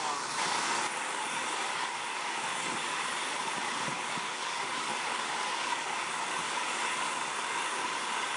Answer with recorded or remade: remade